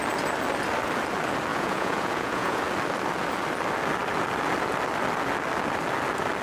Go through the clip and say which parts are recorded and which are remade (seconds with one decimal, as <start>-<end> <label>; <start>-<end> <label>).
0.0-1.5 recorded; 1.5-2.6 remade; 2.6-6.4 recorded